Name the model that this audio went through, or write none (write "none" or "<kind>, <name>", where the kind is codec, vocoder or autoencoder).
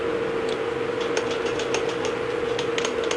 none